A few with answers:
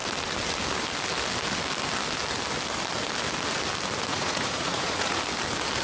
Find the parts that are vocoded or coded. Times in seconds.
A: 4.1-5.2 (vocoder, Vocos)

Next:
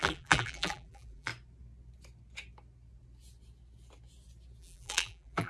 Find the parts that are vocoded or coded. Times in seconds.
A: 0.0-1.3 (vocoder, BigVGAN v2); 4.6-5.5

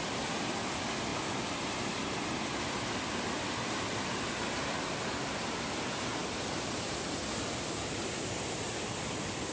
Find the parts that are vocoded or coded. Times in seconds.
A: none

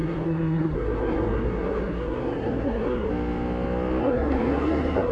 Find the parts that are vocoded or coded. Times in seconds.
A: 0.0-3.1 (codec, SNAC); 4.0-5.1

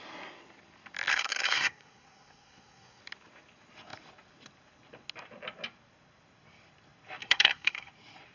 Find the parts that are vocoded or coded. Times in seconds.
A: 1.1-3.0 (codec, SNAC); 7.2-7.9

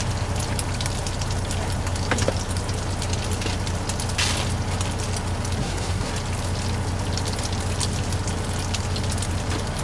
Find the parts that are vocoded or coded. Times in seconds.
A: 5.6-6.1 (codec, SNAC)